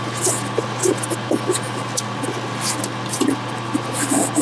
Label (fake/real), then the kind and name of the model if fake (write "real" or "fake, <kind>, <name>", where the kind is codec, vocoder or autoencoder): real